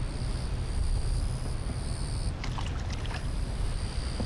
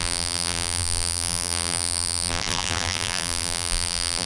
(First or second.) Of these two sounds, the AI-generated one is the second